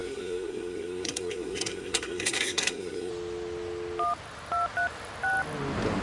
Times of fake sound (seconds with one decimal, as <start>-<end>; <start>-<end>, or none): 0.0-3.1